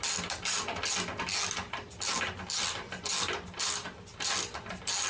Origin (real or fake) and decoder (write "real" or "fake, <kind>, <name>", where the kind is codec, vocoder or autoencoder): real